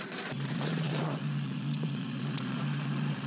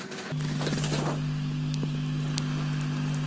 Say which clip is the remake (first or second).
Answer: first